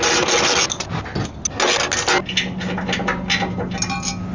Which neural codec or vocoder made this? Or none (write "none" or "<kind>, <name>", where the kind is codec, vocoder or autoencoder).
none